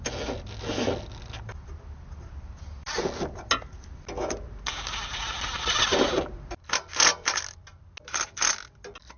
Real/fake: real